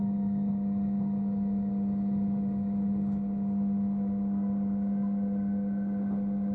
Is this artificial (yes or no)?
no